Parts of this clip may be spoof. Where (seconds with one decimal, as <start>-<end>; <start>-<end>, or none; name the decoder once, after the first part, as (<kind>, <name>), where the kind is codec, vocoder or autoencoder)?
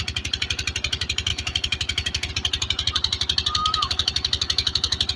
1.3-2.3 (autoencoder, DAC-VAE); 3.6-5.2